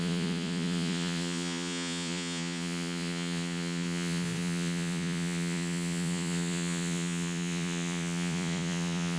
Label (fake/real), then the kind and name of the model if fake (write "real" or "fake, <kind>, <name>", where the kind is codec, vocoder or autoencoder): fake, vocoder, Vocos